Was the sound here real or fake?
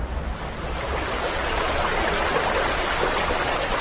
real